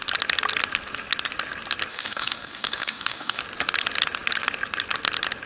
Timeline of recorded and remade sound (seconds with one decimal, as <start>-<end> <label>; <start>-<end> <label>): 0.0-1.9 recorded; 1.9-3.4 remade; 3.4-5.5 recorded